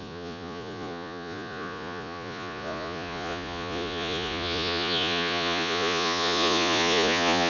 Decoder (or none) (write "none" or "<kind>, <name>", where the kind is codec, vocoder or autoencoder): vocoder, Vocos